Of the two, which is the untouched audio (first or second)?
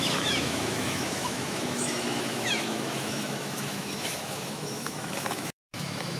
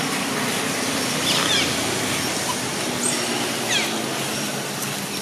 second